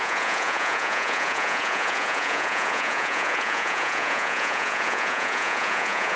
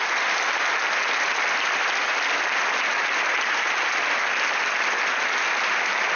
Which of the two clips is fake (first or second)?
first